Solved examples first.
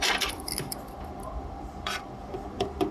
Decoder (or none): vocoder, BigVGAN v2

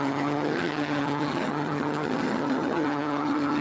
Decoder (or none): vocoder, HiFi-GAN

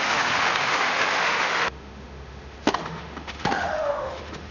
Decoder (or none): autoencoder, DAC-VAE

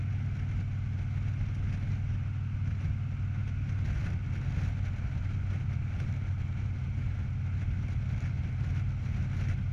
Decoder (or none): none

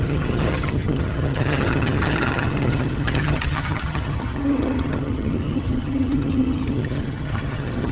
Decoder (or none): vocoder, HiFi-GAN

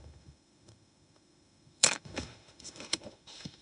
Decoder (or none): autoencoder, DAC-VAE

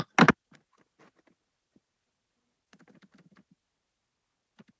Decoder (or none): none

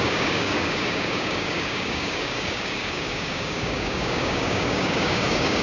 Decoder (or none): codec, DAC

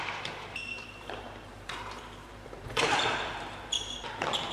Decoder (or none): vocoder, BigVGAN v2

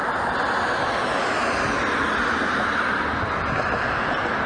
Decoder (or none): none